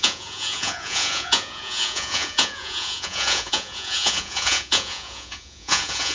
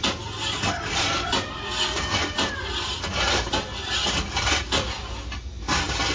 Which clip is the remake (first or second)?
first